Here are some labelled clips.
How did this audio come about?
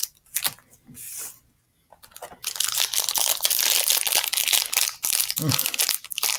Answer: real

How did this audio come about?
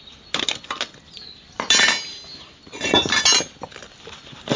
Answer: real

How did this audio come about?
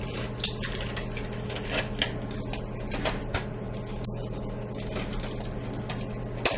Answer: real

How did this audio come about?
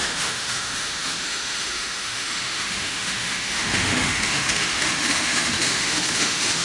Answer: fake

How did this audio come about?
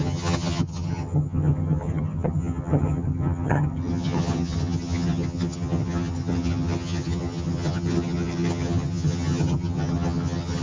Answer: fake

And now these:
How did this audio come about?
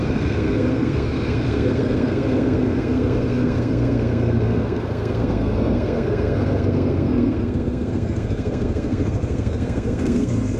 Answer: fake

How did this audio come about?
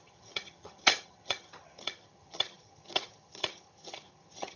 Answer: fake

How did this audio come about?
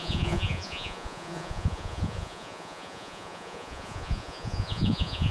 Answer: fake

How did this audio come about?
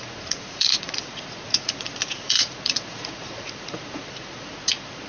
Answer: fake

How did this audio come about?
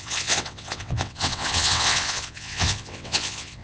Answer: fake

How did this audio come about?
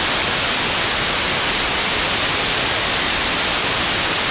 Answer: real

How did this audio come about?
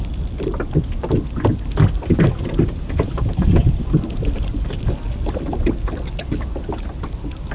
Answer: real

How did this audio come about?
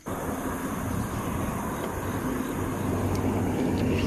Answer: real